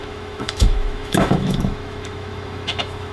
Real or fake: fake